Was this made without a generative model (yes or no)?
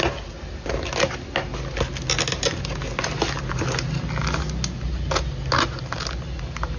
yes